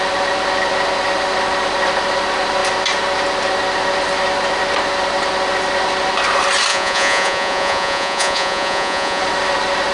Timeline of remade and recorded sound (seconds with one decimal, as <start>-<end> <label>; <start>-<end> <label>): 0.0-6.7 recorded; 6.7-9.2 remade; 9.2-9.9 recorded

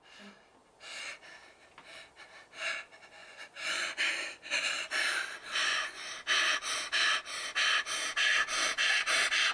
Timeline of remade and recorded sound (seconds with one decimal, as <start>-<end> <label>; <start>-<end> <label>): 0.0-3.2 recorded; 3.2-4.0 remade; 4.0-5.6 recorded; 5.6-6.1 remade; 6.1-9.5 recorded